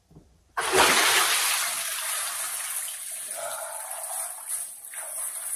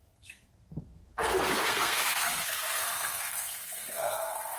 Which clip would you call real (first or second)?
first